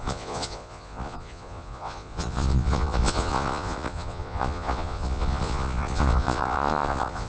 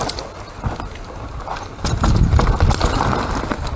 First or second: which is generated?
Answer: first